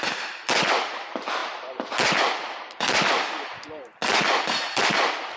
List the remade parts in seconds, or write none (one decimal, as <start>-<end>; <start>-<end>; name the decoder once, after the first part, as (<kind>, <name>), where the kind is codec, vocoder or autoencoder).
none